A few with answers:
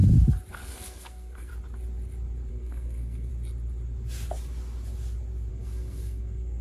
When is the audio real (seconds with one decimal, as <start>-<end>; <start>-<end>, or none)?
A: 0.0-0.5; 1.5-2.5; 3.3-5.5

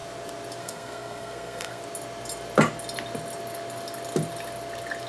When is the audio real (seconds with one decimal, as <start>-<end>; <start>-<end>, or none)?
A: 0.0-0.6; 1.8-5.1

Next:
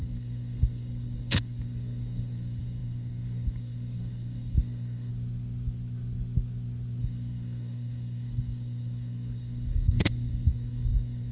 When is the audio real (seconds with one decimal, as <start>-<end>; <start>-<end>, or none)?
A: 5.1-7.0